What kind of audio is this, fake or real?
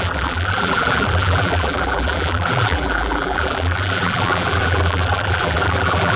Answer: fake